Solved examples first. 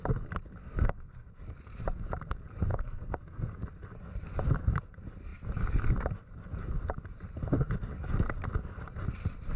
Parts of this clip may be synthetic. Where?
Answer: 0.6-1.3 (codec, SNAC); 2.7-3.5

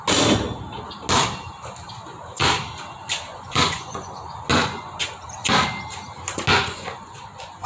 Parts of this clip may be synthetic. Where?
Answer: 3.3-4.1 (vocoder, Vocos); 4.5-5.0; 6.5-7.7

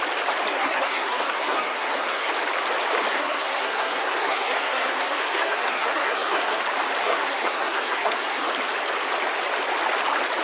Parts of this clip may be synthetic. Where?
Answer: 0.5-2.3 (codec, SNAC); 3.1-6.6; 7.0-8.5

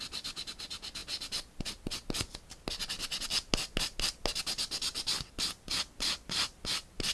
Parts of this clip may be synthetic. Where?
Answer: none